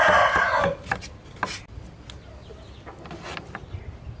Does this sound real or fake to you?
real